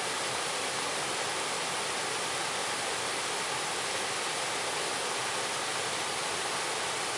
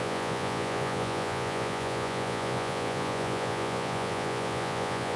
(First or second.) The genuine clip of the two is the first